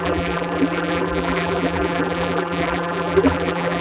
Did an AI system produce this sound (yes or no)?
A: yes